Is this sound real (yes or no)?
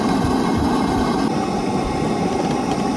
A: yes